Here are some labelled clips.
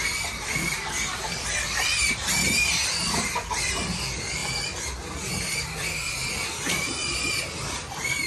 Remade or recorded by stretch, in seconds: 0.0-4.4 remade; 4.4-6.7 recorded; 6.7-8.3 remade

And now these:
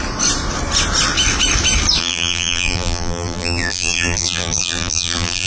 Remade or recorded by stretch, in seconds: 0.0-2.0 recorded; 2.0-5.5 remade

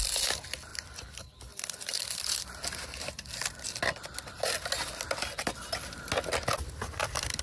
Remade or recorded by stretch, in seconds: 0.0-0.7 recorded; 0.7-3.8 remade; 3.8-7.4 recorded

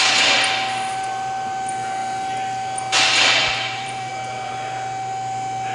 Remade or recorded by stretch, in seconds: 0.0-3.4 recorded; 3.4-4.1 remade; 4.1-5.7 recorded